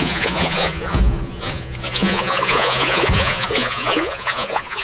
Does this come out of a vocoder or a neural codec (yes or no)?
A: yes